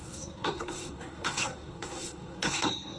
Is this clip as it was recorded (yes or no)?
no